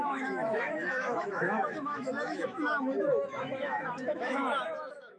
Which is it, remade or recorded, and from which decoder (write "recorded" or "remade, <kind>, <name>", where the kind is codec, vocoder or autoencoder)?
remade, autoencoder, DAC-VAE